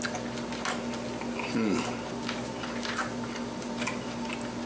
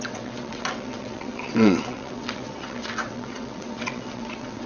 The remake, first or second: second